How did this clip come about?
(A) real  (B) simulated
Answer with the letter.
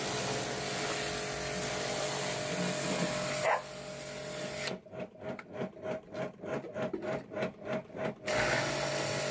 A